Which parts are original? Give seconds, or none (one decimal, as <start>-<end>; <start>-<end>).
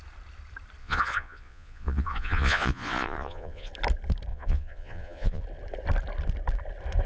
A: 0.0-0.8; 3.7-4.3; 5.4-7.1